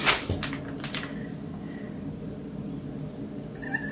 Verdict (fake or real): real